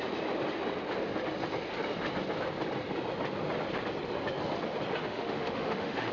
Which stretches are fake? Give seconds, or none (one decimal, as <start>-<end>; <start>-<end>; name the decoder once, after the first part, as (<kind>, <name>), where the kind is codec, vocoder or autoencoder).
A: 5.0-6.1 (autoencoder, DAC-VAE)